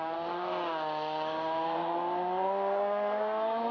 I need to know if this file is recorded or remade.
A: remade